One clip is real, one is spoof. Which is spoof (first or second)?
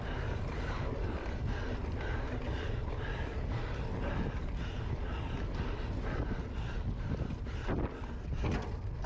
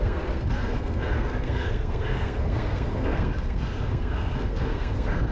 second